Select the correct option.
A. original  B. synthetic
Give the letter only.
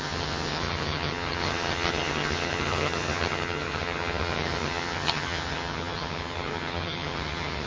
B